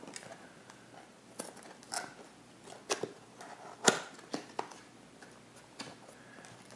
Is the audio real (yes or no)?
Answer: yes